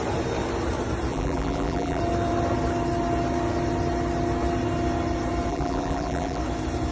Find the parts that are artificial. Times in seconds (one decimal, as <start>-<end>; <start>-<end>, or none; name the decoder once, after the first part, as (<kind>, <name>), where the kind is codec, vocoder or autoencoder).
1.1-2.0 (vocoder, BigVGAN v2); 5.5-6.4